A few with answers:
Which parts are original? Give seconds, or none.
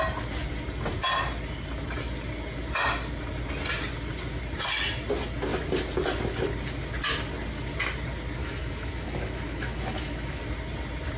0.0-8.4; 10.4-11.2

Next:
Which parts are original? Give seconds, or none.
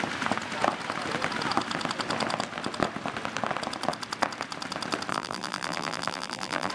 0.0-5.1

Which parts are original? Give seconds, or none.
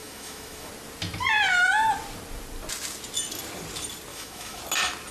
0.7-4.1; 4.6-5.1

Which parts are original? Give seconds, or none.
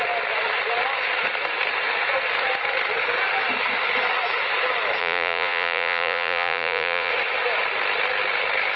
0.0-5.0; 7.1-8.8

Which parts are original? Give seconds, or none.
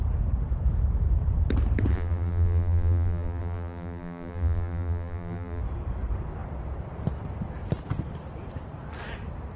0.0-1.9; 5.6-9.6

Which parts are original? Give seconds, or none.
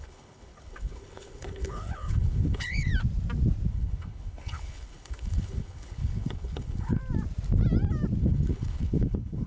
2.9-3.7; 7.0-8.2